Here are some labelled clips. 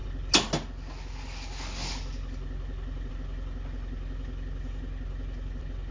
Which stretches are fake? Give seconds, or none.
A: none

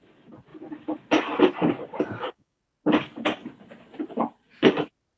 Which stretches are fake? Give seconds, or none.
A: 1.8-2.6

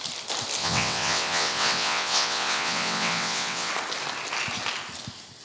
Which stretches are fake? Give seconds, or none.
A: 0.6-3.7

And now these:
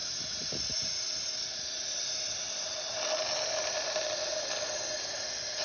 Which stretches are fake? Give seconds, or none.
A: 1.8-3.7